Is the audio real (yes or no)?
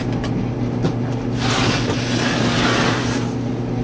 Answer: yes